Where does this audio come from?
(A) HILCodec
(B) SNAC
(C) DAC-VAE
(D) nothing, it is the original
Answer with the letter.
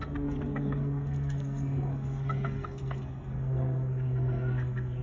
B